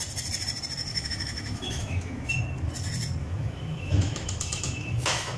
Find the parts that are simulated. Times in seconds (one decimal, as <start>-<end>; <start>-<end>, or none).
0.9-2.3; 3.2-5.4